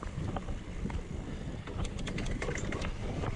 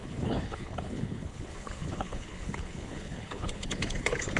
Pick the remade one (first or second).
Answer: second